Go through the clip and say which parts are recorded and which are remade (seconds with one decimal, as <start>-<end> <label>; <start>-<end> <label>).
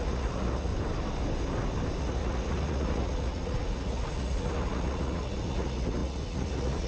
0.0-0.7 remade; 0.7-2.0 recorded; 2.0-6.9 remade